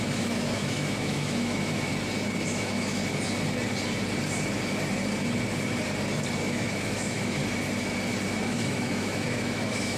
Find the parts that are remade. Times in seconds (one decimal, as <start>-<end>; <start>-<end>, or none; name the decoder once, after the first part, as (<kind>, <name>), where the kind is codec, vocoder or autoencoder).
0.0-1.9 (autoencoder, DAC-VAE); 2.5-3.0; 6.4-7.4; 8.4-10.0